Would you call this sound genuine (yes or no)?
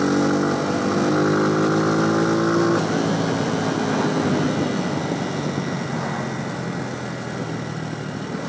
yes